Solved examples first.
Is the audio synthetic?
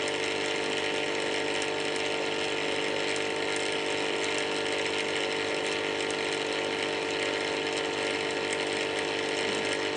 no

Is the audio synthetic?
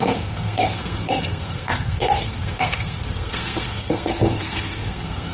yes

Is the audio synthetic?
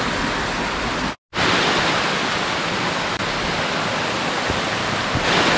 no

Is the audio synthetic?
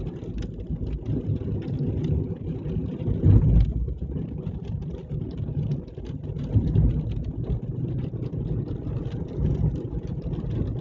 no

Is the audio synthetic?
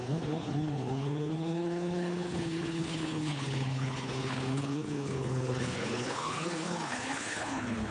yes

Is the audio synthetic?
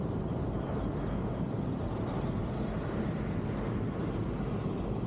no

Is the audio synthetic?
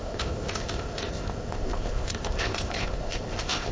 yes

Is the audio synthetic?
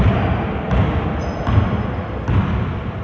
no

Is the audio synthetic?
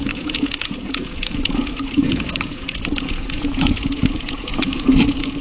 yes